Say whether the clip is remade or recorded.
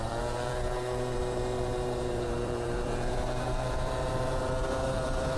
remade